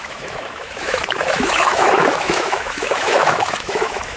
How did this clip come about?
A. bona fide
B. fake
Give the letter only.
B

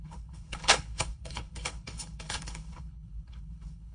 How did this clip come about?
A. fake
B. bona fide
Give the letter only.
A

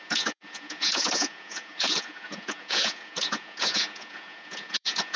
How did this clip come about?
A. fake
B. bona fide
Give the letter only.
A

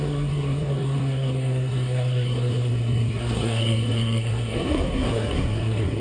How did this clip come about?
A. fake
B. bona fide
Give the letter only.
A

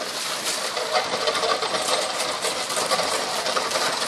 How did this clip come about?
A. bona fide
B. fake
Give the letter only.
A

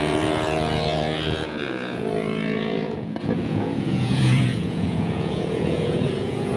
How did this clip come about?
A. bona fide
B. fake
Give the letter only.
B